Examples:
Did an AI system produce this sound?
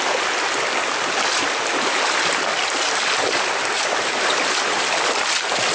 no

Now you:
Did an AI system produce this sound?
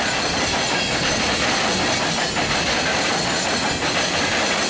no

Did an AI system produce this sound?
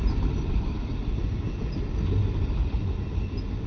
no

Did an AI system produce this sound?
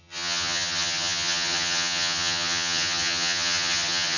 yes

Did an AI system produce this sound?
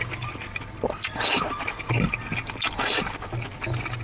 no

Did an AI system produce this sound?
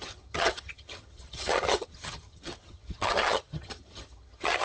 yes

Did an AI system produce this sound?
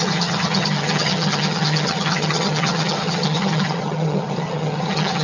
yes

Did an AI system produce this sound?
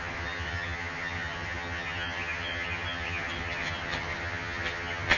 yes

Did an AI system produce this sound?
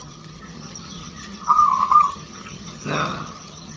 yes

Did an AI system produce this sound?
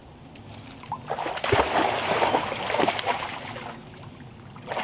no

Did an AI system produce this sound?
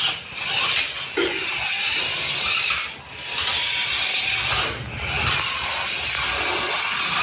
no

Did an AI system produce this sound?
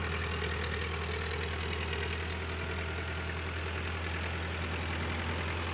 no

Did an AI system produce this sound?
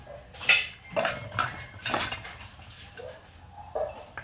no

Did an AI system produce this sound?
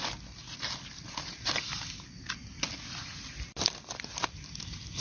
no